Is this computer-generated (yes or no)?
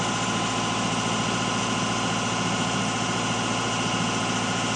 no